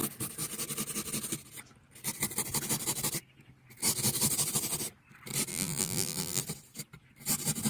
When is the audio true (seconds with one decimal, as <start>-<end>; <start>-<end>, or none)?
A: 0.0-5.5; 6.4-7.7